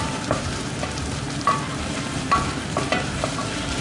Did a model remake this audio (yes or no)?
yes